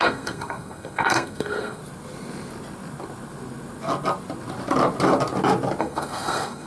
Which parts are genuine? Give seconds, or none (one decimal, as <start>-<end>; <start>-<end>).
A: 1.8-5.8

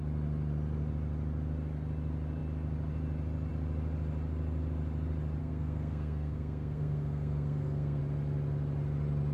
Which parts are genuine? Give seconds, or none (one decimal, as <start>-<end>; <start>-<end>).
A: 0.0-5.4; 8.0-9.3

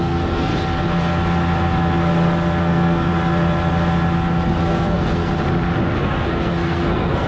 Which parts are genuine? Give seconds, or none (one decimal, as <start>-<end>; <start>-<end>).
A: 0.5-2.6; 3.1-4.6; 5.3-6.0